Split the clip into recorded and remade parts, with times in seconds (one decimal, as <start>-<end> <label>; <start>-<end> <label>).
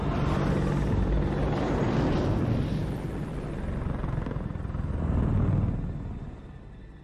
0.0-7.0 recorded